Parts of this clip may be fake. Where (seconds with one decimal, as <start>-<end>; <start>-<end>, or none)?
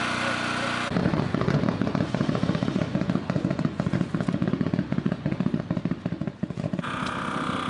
1.0-5.6; 6.2-7.0